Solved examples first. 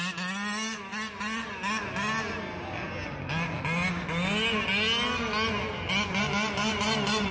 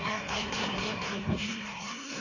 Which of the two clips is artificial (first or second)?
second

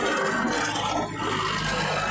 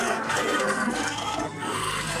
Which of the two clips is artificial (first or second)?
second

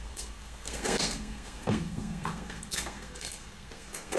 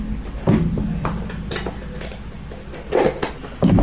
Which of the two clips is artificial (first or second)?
first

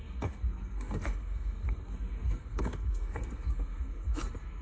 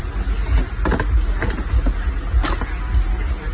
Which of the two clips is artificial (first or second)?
first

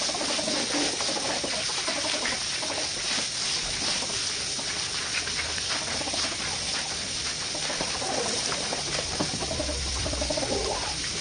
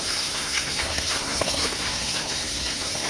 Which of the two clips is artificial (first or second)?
second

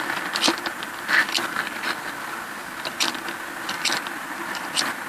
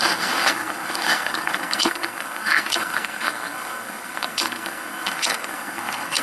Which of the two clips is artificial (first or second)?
second